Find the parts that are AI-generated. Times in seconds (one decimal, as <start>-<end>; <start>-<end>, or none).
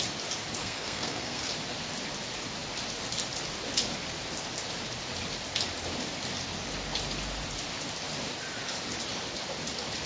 0.6-1.5